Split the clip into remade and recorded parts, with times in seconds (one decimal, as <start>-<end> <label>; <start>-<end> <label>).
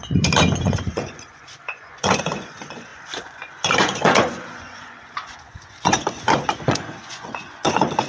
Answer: 0.0-8.1 remade